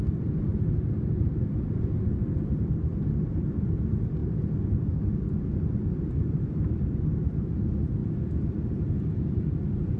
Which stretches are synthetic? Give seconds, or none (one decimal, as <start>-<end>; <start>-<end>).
none